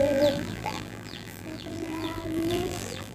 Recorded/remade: remade